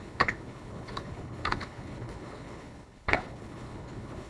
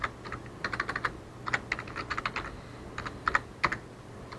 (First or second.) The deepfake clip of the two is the first